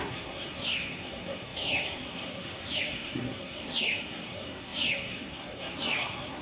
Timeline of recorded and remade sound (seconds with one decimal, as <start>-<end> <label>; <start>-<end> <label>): 0.0-6.4 remade